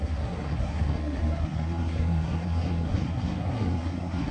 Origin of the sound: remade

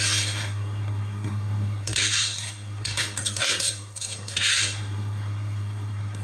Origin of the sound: remade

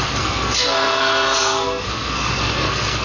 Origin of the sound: remade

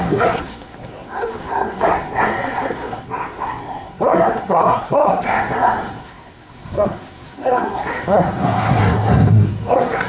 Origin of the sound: remade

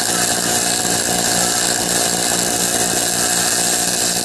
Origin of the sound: recorded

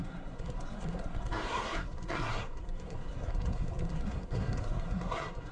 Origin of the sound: remade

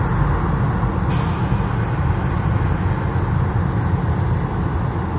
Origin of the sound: recorded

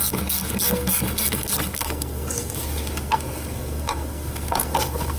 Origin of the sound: remade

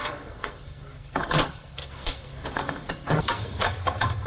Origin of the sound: remade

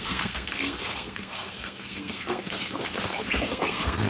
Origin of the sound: remade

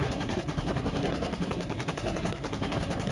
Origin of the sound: remade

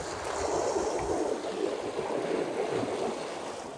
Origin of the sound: recorded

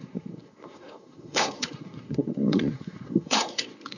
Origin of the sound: remade